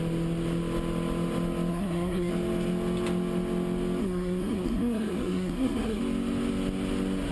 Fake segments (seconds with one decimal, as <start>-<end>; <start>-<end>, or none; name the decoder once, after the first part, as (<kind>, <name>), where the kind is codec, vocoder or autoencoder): 1.7-2.3 (codec, SNAC); 4.0-6.0